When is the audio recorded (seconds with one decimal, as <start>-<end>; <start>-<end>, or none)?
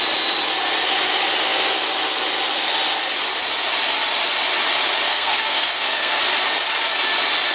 0.0-5.1; 6.2-7.5